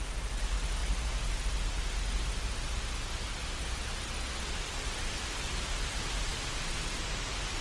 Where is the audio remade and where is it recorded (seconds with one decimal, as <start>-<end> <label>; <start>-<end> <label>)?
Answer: 0.0-7.6 recorded